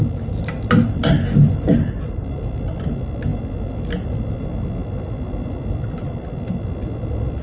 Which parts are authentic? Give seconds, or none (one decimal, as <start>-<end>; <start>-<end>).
0.0-7.4